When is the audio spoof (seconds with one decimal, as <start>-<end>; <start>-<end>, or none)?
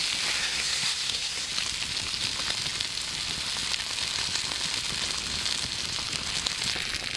0.4-1.5